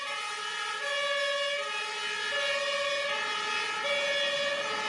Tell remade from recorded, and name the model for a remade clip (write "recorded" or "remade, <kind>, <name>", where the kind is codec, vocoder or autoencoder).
recorded